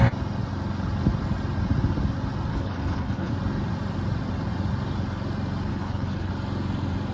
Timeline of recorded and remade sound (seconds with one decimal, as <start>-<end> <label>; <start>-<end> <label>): 0.0-2.5 recorded; 2.5-3.3 remade; 3.3-5.7 recorded; 5.7-6.3 remade; 6.3-7.1 recorded